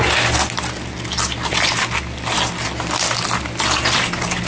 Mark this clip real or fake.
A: real